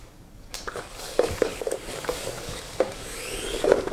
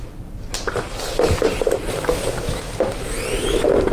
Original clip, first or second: second